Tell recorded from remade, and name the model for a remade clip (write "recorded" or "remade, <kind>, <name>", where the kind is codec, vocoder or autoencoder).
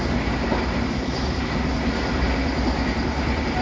recorded